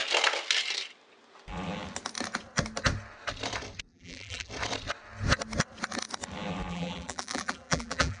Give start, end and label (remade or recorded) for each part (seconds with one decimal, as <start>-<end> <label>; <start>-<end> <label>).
0.0-3.9 recorded; 3.9-4.5 remade; 4.5-6.7 recorded; 6.7-8.2 remade